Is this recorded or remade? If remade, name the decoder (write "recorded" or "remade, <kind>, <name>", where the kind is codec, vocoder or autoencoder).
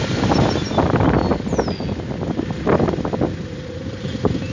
recorded